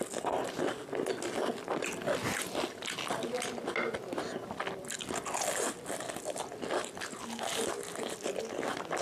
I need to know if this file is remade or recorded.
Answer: recorded